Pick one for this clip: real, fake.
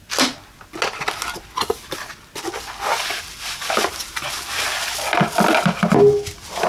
real